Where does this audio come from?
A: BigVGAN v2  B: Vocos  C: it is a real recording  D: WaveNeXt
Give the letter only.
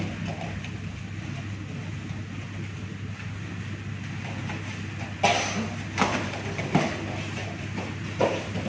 C